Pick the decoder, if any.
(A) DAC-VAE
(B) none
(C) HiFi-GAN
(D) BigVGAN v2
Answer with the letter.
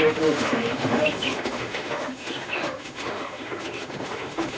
A